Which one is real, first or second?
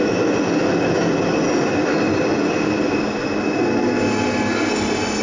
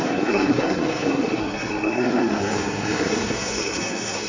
first